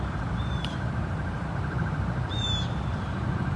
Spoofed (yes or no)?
yes